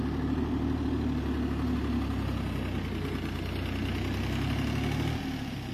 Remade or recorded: recorded